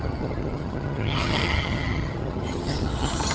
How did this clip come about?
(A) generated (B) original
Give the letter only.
A